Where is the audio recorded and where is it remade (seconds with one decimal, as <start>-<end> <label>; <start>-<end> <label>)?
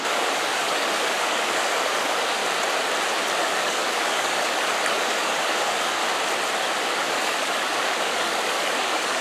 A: 0.0-2.4 remade; 2.4-3.4 recorded; 3.4-6.0 remade; 6.0-6.9 recorded; 6.9-9.2 remade